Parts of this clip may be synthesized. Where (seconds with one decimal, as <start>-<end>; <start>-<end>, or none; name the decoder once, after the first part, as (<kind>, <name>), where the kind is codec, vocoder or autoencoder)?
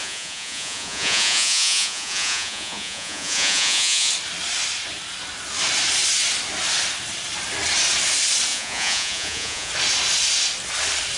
0.0-4.1 (vocoder, Vocos); 8.5-9.7